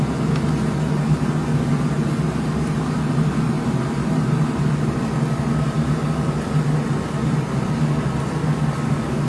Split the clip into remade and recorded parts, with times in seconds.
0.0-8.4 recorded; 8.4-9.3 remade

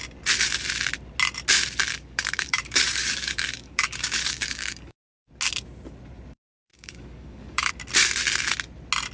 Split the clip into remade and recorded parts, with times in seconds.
0.0-1.9 recorded; 1.9-5.3 remade; 5.3-6.7 recorded; 6.7-7.7 remade; 7.7-9.1 recorded

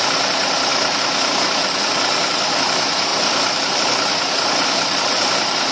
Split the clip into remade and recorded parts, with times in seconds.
0.0-5.7 recorded

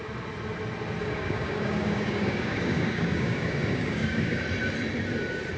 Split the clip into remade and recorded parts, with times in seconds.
0.0-1.0 recorded; 1.0-4.4 remade; 4.4-5.6 recorded

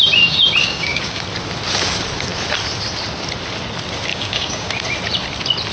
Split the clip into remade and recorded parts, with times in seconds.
0.0-0.6 recorded; 0.6-1.2 remade; 1.2-4.1 recorded; 4.1-4.7 remade; 4.7-5.7 recorded

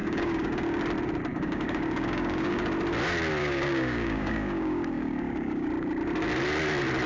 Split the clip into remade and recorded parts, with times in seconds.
0.0-0.8 remade; 0.8-1.3 recorded; 1.3-2.6 remade; 2.6-3.4 recorded; 3.4-5.7 remade; 5.7-7.1 recorded